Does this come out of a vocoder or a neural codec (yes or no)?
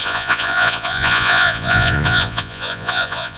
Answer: yes